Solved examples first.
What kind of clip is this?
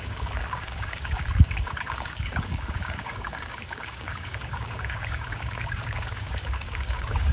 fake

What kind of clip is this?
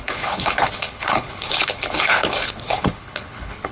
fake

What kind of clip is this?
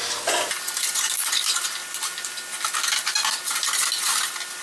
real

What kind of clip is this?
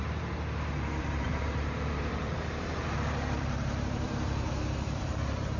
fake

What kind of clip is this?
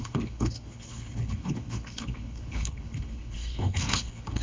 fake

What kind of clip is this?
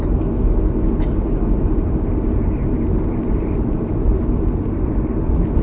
real